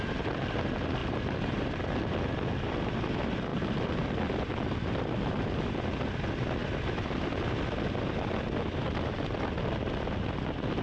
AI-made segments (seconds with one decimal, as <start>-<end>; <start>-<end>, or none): 1.0-1.8; 6.6-7.8